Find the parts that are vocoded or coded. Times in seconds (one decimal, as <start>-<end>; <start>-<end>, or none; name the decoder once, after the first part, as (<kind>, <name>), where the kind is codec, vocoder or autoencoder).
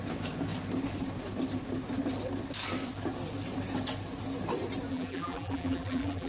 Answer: 4.9-6.3 (vocoder, BigVGAN v2)